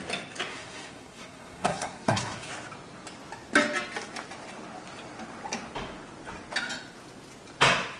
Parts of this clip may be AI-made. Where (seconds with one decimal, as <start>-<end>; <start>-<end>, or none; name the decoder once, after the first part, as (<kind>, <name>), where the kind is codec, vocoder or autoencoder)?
0.5-2.5 (codec, SNAC)